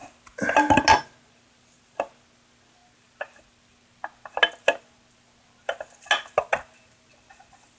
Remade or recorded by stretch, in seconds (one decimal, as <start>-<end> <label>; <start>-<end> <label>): 0.0-7.8 recorded